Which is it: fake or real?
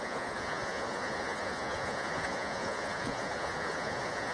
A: fake